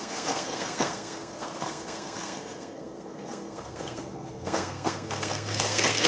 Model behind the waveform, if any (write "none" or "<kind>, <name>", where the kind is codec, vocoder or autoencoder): codec, SNAC